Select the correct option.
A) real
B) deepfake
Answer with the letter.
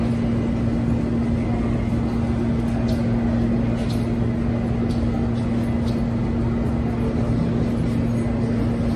A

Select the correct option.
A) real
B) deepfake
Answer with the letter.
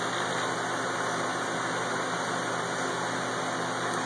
A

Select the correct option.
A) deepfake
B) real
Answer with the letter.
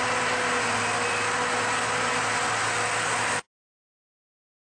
B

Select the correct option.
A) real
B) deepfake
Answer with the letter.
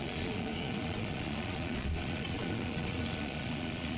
B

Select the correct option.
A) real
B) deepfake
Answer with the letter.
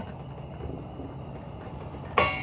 A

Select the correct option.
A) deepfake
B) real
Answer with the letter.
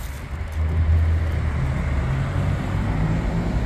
B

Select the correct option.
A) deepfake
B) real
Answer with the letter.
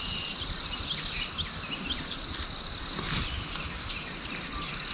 B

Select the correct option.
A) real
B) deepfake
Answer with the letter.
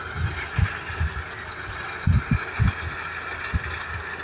A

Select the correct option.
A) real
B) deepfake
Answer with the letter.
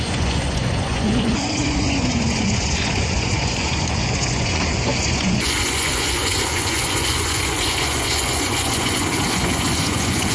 B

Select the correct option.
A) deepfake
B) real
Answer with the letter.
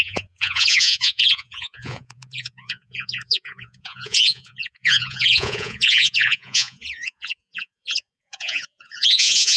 A